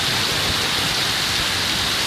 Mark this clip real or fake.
real